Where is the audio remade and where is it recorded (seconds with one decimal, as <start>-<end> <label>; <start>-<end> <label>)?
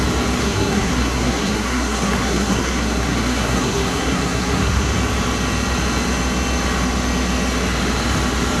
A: 0.0-0.4 recorded; 0.4-4.9 remade; 4.9-8.6 recorded